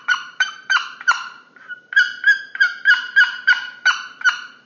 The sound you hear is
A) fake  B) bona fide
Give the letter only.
A